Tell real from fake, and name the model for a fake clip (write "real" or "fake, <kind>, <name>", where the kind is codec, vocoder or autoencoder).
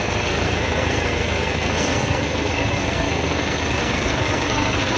fake, codec, SNAC